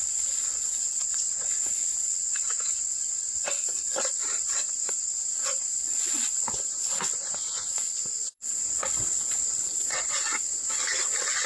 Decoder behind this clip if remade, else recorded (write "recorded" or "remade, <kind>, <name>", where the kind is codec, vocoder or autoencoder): remade, vocoder, WaveNeXt